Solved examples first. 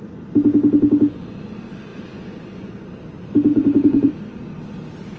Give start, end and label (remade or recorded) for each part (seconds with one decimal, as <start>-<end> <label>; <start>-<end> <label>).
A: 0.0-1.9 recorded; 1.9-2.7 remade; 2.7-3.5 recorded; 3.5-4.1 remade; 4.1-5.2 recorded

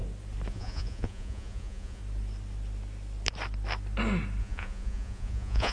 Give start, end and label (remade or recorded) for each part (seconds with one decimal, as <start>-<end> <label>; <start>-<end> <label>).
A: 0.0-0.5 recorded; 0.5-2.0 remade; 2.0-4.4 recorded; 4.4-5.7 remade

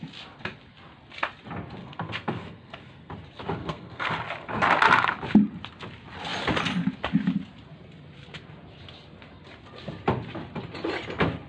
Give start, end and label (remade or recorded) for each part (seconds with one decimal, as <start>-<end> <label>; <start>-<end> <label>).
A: 0.0-1.8 recorded; 1.8-3.1 remade; 3.1-3.6 recorded; 3.6-4.1 remade; 4.1-11.5 recorded

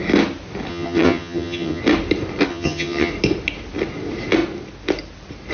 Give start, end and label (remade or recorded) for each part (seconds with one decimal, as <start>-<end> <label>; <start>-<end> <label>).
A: 0.0-0.7 recorded; 0.7-1.8 remade; 1.8-2.5 recorded; 2.5-3.1 remade; 3.1-5.5 recorded